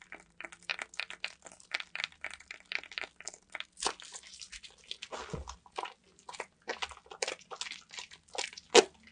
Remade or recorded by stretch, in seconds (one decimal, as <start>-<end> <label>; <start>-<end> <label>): 0.0-9.1 recorded